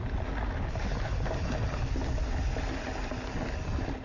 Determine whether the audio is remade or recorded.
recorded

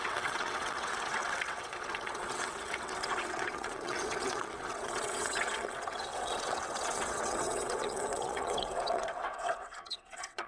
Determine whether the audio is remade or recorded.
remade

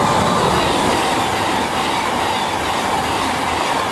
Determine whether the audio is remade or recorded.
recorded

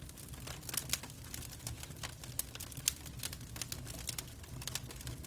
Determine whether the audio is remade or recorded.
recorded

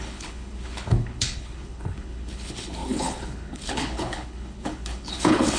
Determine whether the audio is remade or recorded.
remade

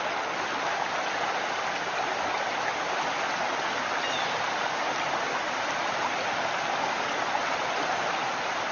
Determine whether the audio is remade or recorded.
recorded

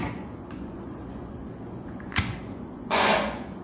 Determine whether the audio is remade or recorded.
remade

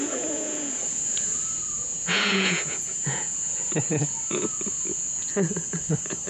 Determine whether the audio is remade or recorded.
remade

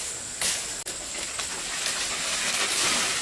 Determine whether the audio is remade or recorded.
recorded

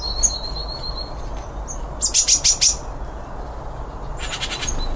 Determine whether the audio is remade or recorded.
recorded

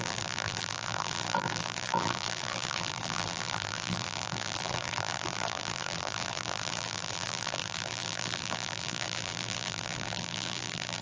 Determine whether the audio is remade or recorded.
remade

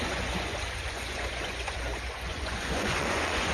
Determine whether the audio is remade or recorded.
remade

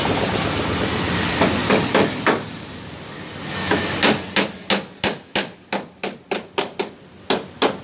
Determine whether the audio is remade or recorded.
recorded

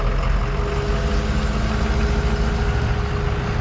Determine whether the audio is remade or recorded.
recorded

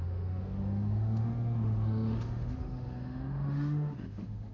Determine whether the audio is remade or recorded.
remade